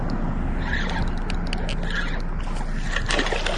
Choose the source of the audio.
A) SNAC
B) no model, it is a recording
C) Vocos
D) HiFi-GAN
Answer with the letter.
B